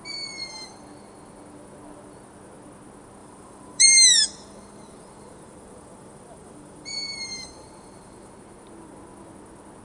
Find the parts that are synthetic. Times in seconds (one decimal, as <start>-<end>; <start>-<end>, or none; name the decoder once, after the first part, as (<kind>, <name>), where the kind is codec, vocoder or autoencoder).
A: 3.2-8.3 (vocoder, BigVGAN v2)

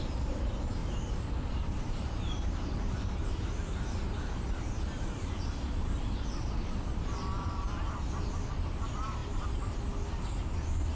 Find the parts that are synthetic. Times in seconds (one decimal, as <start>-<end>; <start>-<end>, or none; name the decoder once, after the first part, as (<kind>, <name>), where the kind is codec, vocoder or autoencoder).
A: 0.8-4.8 (vocoder, BigVGAN v2)